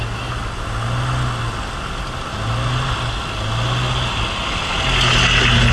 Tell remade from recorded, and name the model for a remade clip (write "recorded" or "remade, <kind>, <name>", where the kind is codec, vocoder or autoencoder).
recorded